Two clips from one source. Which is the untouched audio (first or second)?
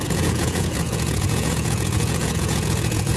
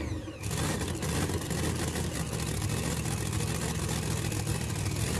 second